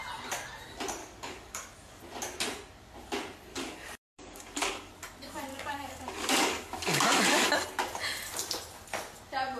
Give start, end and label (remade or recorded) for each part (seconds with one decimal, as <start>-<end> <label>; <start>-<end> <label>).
0.0-1.0 recorded; 1.0-2.0 remade; 2.0-3.5 recorded; 3.5-4.9 remade; 4.9-5.5 recorded; 5.5-7.5 remade; 7.5-9.6 recorded